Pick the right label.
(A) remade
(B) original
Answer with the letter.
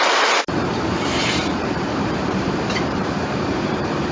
A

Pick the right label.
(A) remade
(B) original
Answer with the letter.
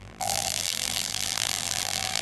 A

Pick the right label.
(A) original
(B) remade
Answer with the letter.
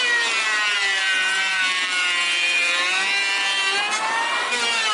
B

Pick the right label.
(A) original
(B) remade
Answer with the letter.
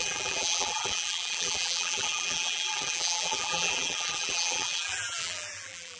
B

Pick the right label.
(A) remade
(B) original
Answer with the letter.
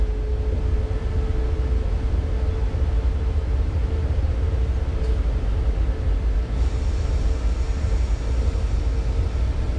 B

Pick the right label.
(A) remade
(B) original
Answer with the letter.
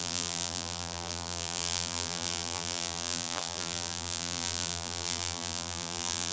A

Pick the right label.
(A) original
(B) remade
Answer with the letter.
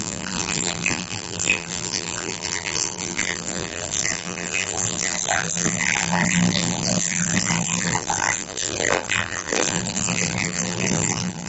B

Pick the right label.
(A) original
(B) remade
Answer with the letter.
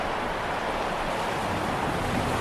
A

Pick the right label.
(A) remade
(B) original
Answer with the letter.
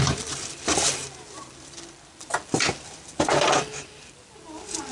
A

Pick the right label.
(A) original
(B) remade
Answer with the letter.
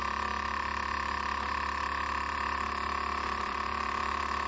B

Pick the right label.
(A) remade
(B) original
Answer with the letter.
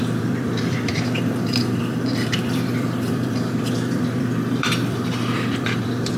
A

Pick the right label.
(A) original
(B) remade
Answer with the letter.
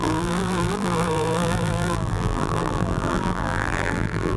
B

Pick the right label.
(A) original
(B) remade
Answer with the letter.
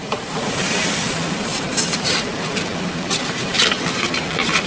B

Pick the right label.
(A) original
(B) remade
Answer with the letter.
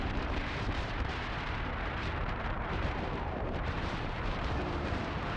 B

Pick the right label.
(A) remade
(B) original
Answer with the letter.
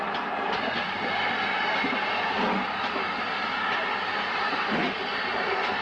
B